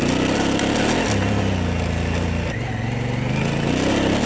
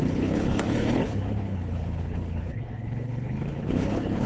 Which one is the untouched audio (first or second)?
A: first